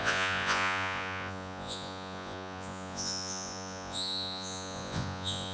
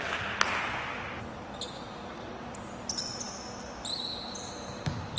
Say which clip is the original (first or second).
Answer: second